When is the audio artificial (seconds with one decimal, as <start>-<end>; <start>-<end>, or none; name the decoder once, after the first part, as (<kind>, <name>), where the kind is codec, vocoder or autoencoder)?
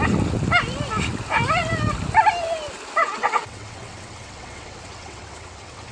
3.0-5.9 (vocoder, WaveNeXt)